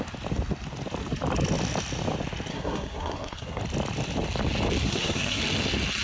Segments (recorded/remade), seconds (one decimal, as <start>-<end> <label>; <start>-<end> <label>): 0.0-2.5 recorded; 2.5-3.6 remade; 3.6-4.8 recorded; 4.8-5.4 remade; 5.4-6.0 recorded